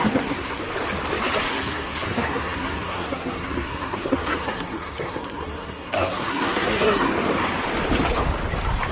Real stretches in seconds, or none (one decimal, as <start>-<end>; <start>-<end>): 0.6-1.5; 7.1-8.9

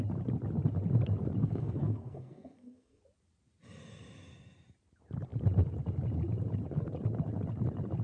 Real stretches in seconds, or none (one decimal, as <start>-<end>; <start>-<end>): 0.0-1.4; 3.0-8.0